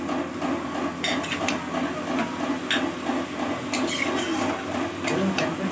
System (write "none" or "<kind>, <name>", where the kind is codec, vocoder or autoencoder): none